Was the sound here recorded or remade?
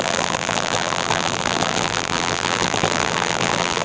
remade